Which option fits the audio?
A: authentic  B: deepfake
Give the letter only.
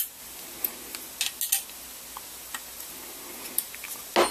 A